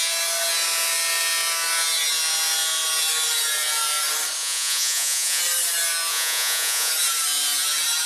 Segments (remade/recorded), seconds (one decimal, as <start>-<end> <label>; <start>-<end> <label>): 0.0-4.4 recorded; 4.4-5.4 remade; 5.4-6.1 recorded; 6.1-6.9 remade; 6.9-8.1 recorded